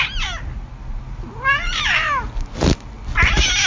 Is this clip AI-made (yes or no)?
no